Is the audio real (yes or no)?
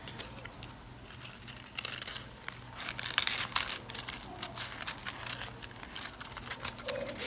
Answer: yes